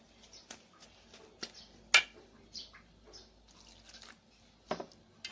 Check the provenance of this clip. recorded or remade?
recorded